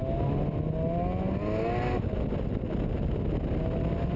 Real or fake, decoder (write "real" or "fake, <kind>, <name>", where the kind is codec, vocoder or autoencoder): real